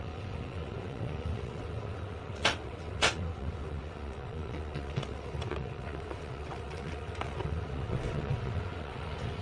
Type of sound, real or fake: fake